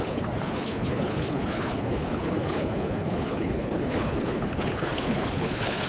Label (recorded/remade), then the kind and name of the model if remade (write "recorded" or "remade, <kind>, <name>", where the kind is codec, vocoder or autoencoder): remade, codec, HILCodec